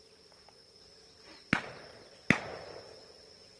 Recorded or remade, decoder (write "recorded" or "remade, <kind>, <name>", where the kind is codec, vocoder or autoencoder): recorded